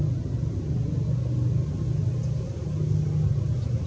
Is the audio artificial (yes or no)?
no